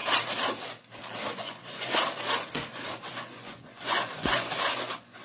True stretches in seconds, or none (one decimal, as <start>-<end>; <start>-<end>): 0.0-1.3; 2.0-2.5